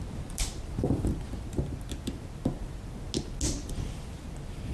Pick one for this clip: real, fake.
real